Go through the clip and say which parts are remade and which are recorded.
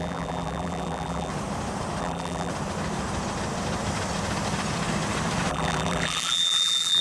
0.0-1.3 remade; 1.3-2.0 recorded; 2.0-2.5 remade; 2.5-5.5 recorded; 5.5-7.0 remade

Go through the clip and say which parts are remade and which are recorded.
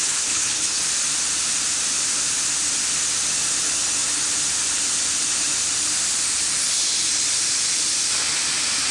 0.0-0.9 remade; 0.9-8.9 recorded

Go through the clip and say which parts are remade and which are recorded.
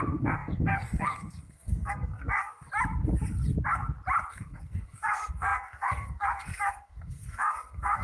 0.0-2.7 remade; 2.7-4.3 recorded; 4.3-8.0 remade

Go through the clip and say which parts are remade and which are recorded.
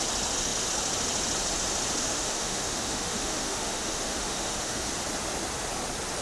0.0-2.0 recorded; 2.0-4.9 remade; 4.9-6.2 recorded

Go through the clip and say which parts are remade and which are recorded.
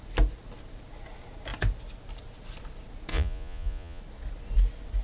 0.0-3.1 recorded; 3.1-4.0 remade; 4.0-5.0 recorded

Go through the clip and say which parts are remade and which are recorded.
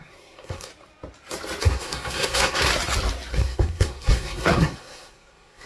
0.0-0.7 remade; 0.7-1.6 recorded; 1.6-2.7 remade; 2.7-3.3 recorded; 3.3-5.7 remade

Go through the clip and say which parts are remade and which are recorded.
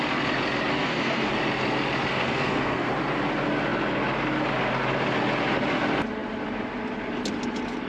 0.0-0.7 recorded; 0.7-1.3 remade; 1.3-2.1 recorded; 2.1-2.9 remade; 2.9-7.9 recorded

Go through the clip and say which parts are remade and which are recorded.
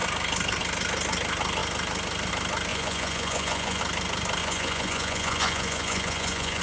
0.0-2.7 recorded; 2.7-3.8 remade; 3.8-4.4 recorded; 4.4-6.6 remade